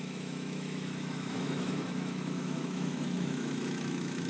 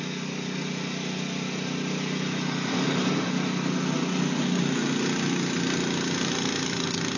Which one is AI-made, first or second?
first